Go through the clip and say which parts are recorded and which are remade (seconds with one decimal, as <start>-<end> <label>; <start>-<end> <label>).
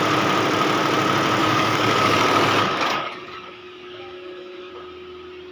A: 0.0-1.4 recorded; 1.4-4.7 remade; 4.7-5.5 recorded